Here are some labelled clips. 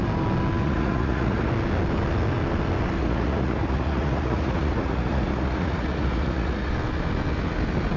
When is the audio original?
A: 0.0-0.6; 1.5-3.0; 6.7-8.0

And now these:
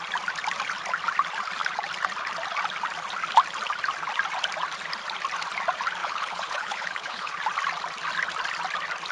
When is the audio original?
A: 0.0-6.0; 7.3-9.1

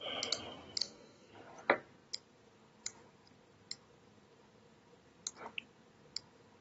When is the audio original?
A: 0.0-0.8; 1.3-6.6